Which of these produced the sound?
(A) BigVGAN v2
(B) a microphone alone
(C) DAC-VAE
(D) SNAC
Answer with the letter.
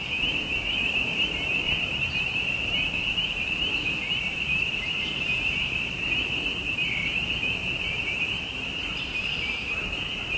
A